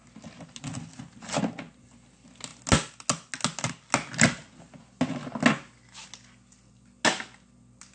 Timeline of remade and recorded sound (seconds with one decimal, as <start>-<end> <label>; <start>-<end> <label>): 0.0-7.9 recorded